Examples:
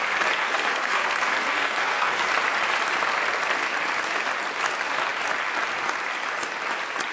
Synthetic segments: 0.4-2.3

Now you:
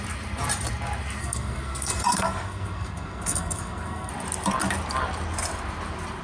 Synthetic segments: 1.2-4.1

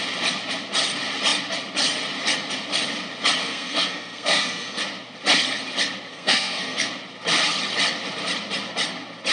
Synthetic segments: 3.4-4.8; 6.1-6.9

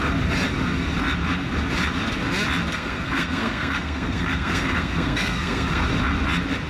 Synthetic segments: 2.7-5.8

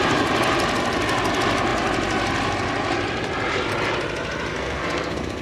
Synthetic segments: 4.5-5.4

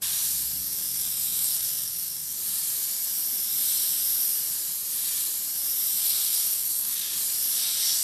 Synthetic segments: 0.6-2.4; 6.0-7.1

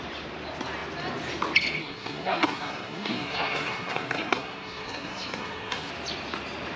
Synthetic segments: 1.8-5.9

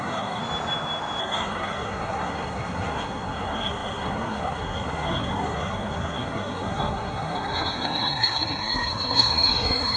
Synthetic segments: 0.0-0.4; 1.2-10.0